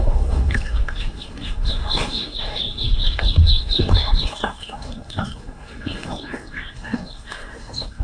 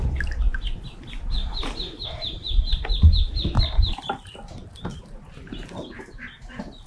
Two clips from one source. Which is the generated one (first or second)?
first